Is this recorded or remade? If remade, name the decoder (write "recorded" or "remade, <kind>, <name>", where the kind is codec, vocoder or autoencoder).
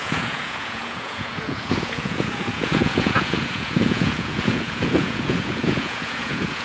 remade, vocoder, Vocos